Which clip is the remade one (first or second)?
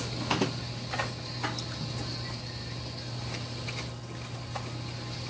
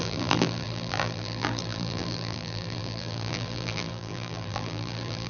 second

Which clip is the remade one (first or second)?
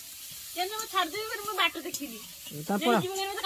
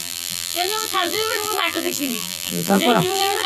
second